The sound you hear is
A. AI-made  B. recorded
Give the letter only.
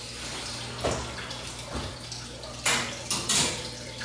B